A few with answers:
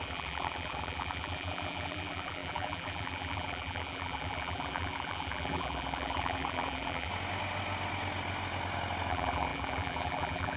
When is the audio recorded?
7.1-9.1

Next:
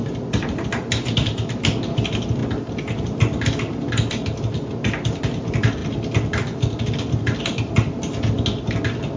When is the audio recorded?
0.0-9.2

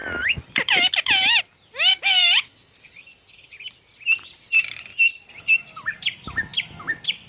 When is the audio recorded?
0.0-1.9; 5.2-7.3

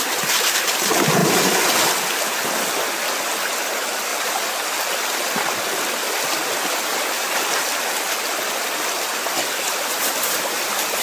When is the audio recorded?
0.0-11.0

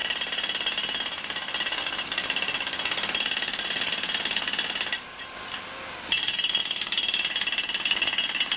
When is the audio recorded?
0.0-8.6

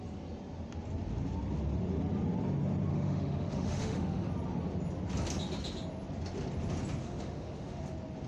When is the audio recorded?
0.0-2.9; 4.3-7.0; 7.8-8.3